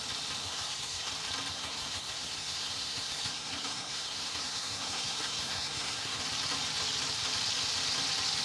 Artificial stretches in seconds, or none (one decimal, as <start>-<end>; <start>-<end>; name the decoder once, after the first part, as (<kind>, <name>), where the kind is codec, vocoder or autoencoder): 0.4-1.1 (codec, SNAC); 1.5-6.2

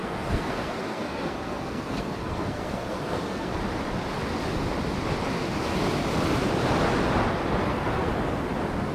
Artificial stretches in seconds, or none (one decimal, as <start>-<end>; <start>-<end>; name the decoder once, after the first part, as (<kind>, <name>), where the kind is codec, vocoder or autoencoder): 0.0-3.6 (codec, SNAC); 7.6-8.1

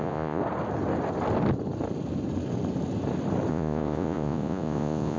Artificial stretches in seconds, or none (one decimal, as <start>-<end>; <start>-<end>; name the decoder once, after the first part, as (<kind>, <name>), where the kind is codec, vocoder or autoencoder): 0.0-0.4 (vocoder, Vocos); 3.5-5.2